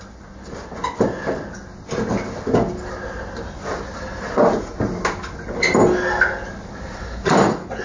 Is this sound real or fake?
real